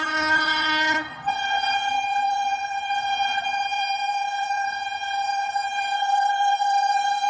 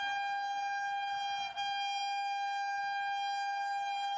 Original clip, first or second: second